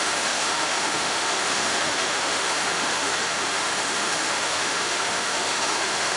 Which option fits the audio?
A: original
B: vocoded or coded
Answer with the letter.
B